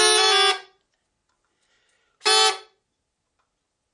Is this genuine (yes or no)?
yes